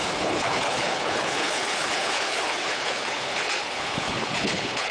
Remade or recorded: remade